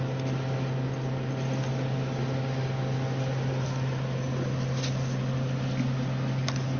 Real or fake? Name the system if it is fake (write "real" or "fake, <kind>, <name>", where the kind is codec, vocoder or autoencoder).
real